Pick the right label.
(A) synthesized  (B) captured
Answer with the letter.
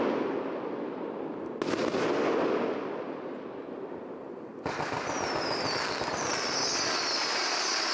B